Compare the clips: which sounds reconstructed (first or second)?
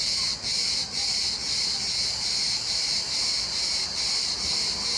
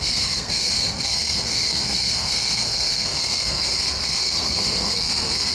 second